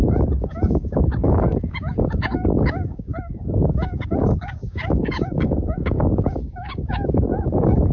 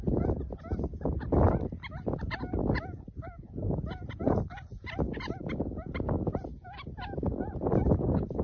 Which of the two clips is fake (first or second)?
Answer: first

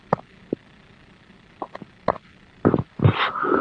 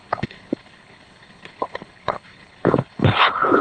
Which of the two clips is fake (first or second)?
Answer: second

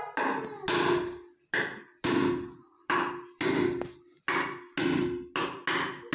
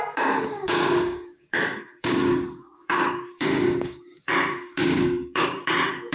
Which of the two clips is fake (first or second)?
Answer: second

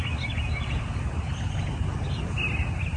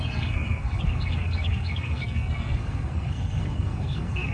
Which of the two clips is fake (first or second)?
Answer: second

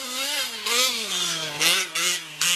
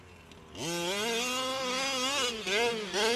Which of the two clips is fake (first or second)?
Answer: first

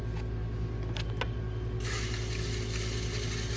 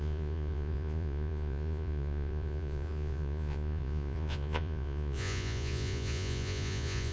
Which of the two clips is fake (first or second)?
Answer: second